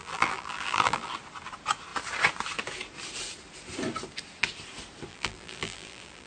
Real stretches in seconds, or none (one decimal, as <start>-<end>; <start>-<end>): 1.1-5.1